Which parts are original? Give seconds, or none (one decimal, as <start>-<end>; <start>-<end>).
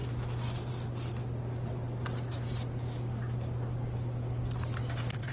0.0-5.3